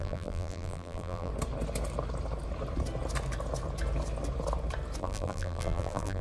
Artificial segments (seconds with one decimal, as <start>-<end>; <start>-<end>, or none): 0.0-1.3; 5.0-6.2